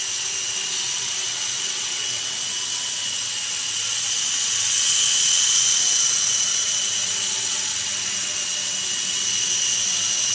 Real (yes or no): no